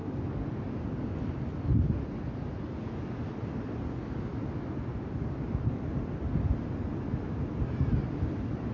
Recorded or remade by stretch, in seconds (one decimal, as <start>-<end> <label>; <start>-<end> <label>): 0.0-8.7 recorded